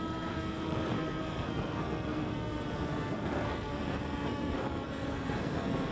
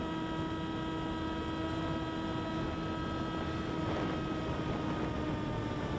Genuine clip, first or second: second